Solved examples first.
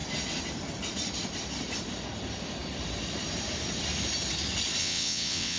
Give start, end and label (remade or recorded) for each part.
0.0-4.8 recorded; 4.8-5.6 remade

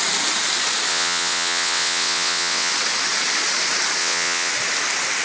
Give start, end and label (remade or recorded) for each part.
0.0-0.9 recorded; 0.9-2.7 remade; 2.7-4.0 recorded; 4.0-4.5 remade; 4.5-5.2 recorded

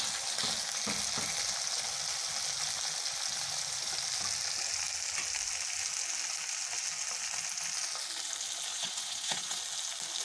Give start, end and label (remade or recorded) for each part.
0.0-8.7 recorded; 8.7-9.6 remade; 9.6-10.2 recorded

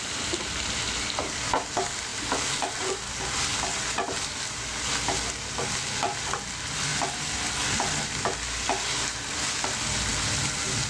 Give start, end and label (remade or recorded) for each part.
0.0-10.9 recorded

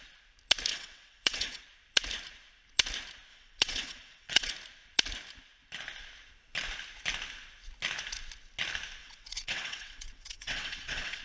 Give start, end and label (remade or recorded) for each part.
0.0-0.7 recorded; 0.7-1.6 remade; 1.6-3.3 recorded; 3.3-4.5 remade; 4.5-9.0 recorded; 9.0-11.2 remade

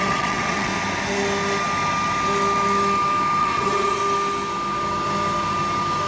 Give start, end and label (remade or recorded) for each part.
0.0-0.7 remade; 0.7-3.4 recorded; 3.4-4.0 remade; 4.0-6.1 recorded

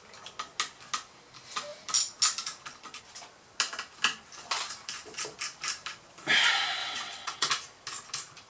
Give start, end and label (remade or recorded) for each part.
0.0-6.8 recorded; 6.8-7.5 remade; 7.5-8.5 recorded

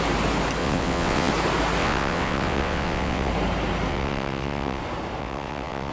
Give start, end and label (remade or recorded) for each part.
0.0-0.6 recorded; 0.6-1.3 remade; 1.3-1.8 recorded; 1.8-3.3 remade; 3.3-3.9 recorded; 3.9-4.8 remade; 4.8-5.2 recorded; 5.2-5.9 remade